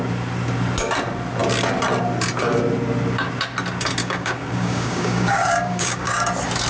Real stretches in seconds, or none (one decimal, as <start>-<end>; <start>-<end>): 0.0-4.0; 6.3-6.7